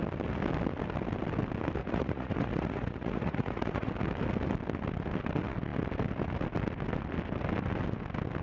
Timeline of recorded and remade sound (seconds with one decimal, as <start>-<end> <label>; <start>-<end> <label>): 0.0-1.8 recorded; 1.8-3.9 remade; 3.9-8.4 recorded